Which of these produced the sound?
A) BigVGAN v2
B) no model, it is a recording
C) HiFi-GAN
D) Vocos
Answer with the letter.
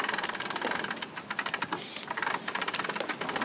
B